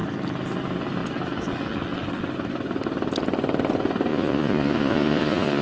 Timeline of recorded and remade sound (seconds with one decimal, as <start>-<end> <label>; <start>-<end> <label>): 0.0-4.1 recorded; 4.1-5.6 remade